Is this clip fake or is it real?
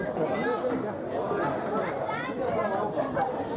real